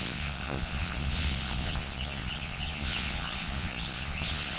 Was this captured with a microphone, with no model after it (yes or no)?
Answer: no